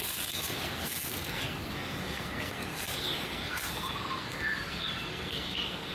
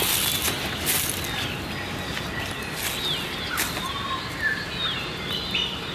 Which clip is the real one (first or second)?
second